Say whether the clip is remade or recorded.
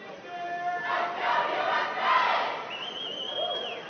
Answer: recorded